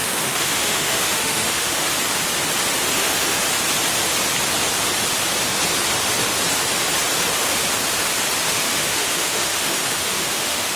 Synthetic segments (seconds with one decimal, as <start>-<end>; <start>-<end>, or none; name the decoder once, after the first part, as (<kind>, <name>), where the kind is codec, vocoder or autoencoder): 0.0-1.9 (autoencoder, DAC-VAE); 2.9-3.4; 8.4-10.8